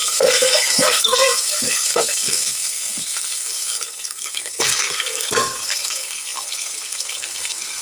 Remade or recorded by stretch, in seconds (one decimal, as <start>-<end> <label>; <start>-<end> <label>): 0.0-7.8 remade